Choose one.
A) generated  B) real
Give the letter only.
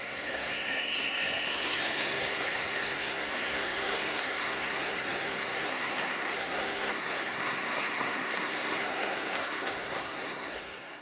A